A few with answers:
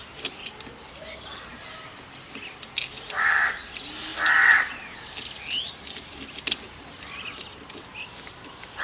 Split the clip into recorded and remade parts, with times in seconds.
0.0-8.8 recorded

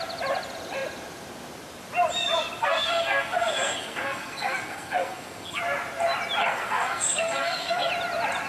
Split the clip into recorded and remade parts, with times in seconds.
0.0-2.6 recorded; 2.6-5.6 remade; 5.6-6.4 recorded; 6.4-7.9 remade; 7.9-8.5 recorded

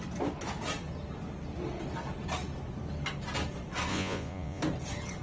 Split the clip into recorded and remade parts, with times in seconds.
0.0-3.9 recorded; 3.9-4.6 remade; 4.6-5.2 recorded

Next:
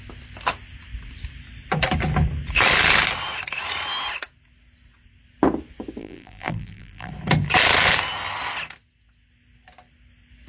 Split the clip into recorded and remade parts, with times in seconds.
0.0-6.0 recorded; 6.0-7.1 remade; 7.1-10.5 recorded

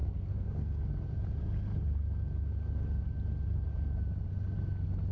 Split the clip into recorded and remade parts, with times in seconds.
0.0-0.9 remade; 0.9-5.1 recorded